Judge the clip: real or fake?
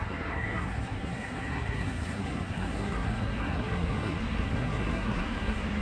fake